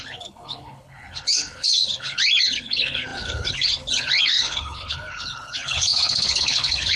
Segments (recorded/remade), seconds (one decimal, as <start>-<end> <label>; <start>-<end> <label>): 0.0-7.0 remade